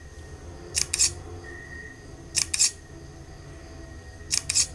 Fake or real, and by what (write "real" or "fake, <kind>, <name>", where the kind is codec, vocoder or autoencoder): real